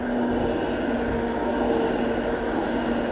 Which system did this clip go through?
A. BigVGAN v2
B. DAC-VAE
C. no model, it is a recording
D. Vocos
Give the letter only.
C